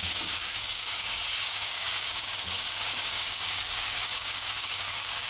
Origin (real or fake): fake